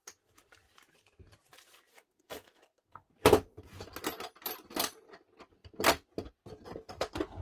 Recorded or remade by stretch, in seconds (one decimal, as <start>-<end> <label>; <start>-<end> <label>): 0.0-1.9 recorded; 1.9-3.1 remade; 3.1-7.4 recorded